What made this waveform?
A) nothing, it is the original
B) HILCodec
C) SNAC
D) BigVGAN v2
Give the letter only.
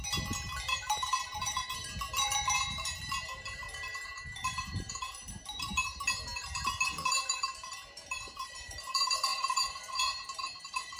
D